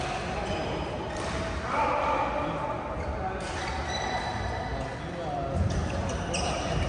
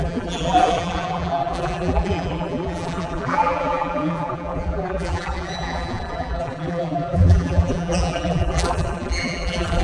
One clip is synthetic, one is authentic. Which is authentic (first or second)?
first